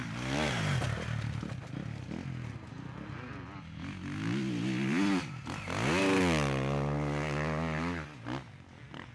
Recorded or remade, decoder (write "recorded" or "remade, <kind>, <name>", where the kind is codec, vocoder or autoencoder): recorded